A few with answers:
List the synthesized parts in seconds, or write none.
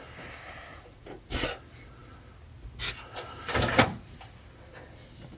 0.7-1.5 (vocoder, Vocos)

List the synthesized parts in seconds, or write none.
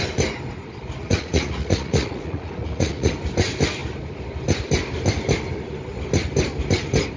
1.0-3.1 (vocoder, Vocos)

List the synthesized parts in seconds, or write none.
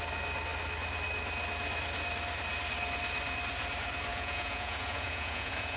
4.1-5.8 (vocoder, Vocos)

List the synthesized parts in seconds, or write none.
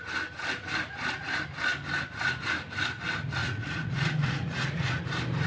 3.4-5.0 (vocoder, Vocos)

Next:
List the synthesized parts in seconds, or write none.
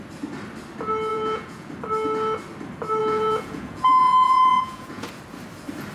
1.1-1.7 (vocoder, Vocos); 3.0-5.1